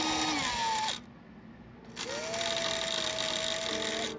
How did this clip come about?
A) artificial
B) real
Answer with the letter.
B